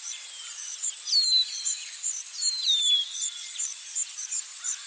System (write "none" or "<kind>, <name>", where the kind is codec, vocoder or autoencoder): vocoder, BigVGAN v2